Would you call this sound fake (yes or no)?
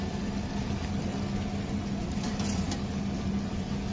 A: yes